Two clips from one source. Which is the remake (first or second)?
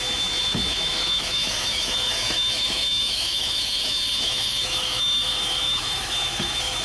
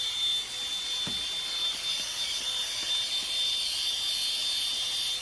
first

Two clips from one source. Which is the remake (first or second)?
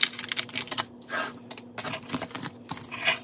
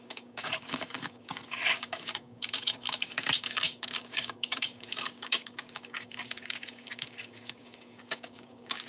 second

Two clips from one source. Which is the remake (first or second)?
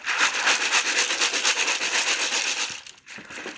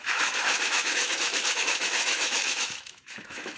second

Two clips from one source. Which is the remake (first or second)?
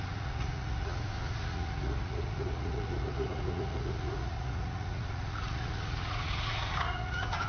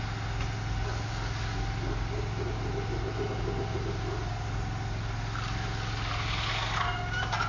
first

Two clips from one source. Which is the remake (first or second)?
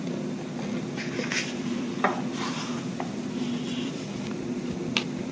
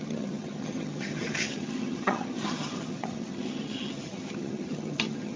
second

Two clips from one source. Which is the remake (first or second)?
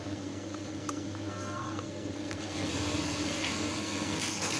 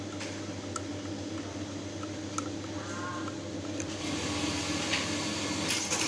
first